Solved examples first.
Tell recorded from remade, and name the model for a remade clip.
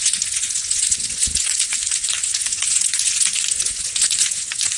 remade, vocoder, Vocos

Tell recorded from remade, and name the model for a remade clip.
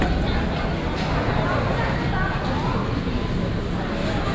recorded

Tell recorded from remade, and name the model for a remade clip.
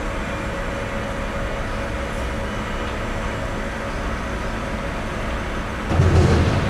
recorded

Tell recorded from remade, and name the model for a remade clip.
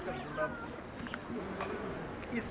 recorded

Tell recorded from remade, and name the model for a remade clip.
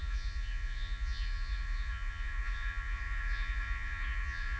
remade, vocoder, Vocos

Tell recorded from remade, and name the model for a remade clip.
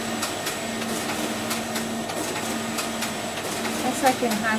recorded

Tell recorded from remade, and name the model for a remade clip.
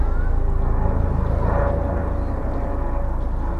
recorded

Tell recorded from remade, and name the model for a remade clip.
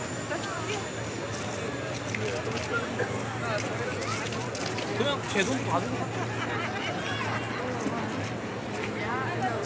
recorded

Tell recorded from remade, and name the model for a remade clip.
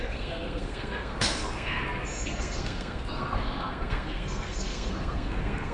remade, codec, SNAC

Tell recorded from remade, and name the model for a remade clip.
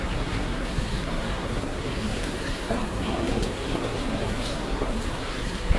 remade, codec, SNAC